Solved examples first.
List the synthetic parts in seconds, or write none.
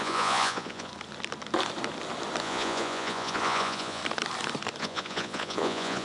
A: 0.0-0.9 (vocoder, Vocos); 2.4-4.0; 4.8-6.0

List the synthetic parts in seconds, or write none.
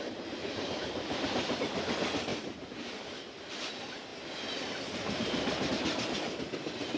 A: 0.4-1.6 (vocoder, BigVGAN v2); 2.3-3.1